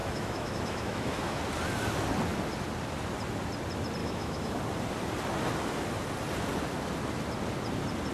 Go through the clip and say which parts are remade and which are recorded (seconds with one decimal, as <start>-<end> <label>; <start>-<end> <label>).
0.0-1.4 remade; 1.4-4.0 recorded; 4.0-4.6 remade; 4.6-8.1 recorded